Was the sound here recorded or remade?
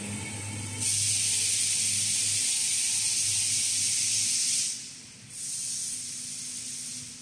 recorded